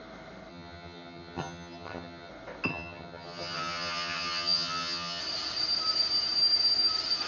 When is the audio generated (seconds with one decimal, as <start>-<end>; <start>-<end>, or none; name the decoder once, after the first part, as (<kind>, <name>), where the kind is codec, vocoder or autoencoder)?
0.5-2.3 (vocoder, HiFi-GAN); 2.7-5.2